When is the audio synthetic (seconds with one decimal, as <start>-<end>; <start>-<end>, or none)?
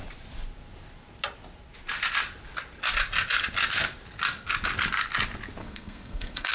5.6-6.5